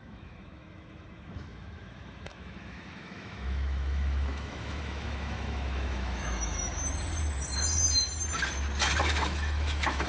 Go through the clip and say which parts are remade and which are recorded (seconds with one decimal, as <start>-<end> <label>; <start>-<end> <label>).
0.0-6.7 remade; 6.7-9.0 recorded; 9.0-10.1 remade